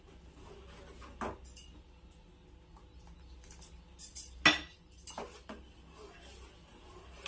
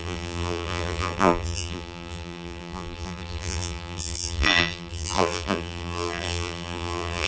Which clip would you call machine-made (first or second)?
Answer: second